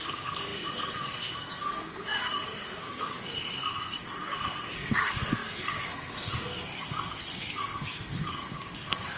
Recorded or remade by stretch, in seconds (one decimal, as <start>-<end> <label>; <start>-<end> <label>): 0.0-9.2 remade